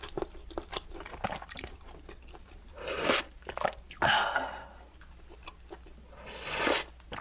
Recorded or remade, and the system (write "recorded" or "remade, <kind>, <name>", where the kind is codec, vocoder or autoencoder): recorded